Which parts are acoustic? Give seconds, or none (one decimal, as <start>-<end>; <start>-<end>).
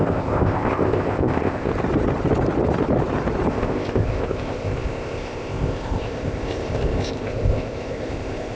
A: 1.7-3.5